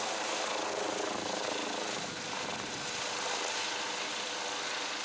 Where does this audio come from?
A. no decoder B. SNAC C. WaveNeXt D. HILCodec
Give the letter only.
A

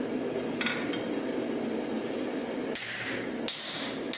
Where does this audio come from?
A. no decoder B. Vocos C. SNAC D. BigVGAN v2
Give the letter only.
A